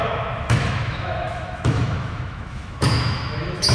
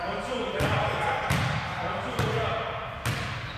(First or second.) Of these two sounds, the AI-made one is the first